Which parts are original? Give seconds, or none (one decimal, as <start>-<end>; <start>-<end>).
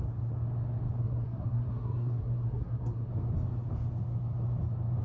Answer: 0.0-1.0; 3.1-5.0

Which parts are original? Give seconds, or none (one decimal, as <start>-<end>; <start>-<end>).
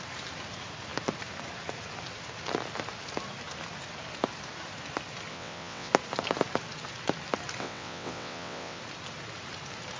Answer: 0.0-5.3; 5.9-7.6; 8.8-10.0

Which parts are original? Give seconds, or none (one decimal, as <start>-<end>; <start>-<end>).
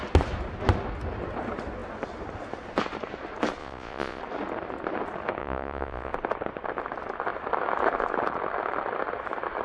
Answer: 0.0-3.6; 4.2-5.4; 6.1-9.6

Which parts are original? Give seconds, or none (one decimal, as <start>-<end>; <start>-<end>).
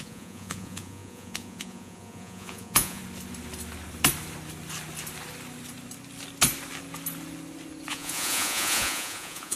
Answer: 3.0-7.9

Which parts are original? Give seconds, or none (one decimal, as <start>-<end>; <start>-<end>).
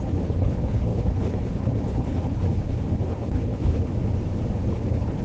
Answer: 3.9-4.7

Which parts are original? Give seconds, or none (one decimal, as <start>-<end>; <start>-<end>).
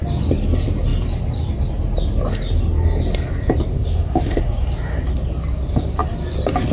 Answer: 0.0-3.7; 4.4-6.7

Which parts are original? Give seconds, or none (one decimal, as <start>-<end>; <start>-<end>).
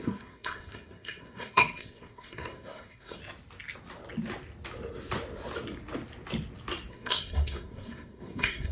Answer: 3.2-6.9